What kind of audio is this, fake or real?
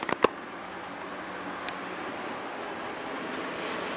real